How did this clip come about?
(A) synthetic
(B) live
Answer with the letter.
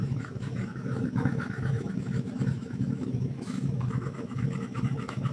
A